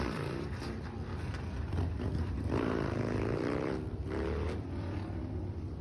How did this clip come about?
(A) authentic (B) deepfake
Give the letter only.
B